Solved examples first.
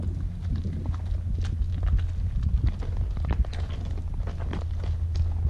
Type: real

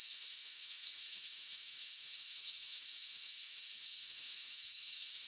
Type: fake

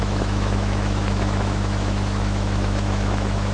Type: fake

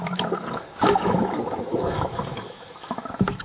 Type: fake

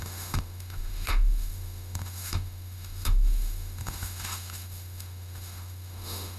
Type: fake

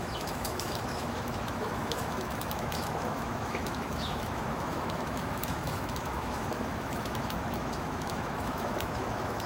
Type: fake